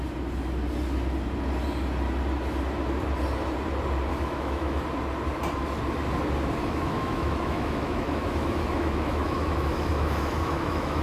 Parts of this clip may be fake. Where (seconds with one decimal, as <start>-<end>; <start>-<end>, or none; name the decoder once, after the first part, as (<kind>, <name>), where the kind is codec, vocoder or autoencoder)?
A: 4.1-4.8 (autoencoder, DAC-VAE); 6.6-11.0